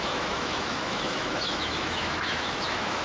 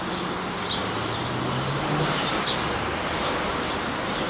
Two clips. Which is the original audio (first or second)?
second